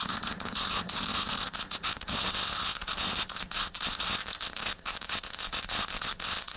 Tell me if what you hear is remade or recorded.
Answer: remade